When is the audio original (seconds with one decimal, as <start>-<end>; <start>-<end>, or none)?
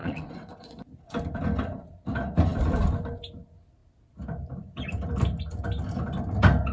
0.8-6.7